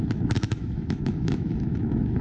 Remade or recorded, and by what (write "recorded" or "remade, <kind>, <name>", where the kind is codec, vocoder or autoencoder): remade, autoencoder, DAC-VAE